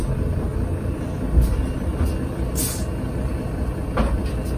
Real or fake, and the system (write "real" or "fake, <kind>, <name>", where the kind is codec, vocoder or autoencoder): real